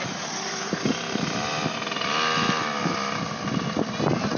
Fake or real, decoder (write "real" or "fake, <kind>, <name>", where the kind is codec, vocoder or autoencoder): real